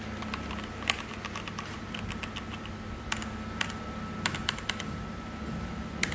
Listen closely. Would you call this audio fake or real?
real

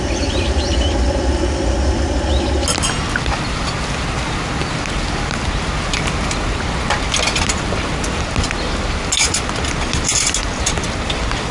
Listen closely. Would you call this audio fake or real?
real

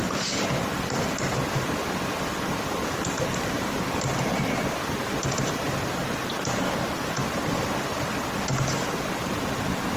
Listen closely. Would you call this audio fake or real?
real